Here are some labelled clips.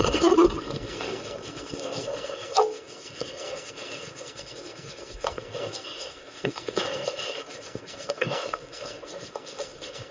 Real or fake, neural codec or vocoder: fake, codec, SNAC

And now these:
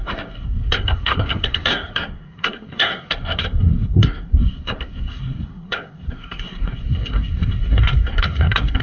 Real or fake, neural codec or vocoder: fake, codec, SNAC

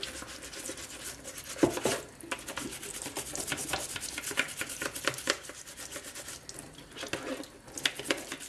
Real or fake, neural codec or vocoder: real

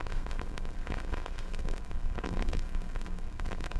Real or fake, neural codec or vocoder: fake, codec, SNAC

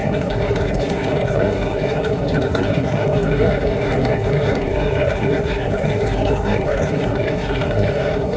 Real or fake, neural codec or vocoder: fake, codec, SNAC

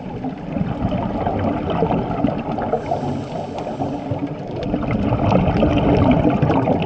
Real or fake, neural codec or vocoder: real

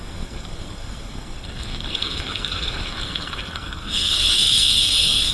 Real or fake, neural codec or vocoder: fake, codec, SNAC